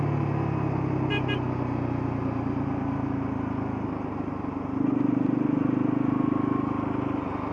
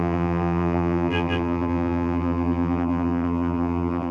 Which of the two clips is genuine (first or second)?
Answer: first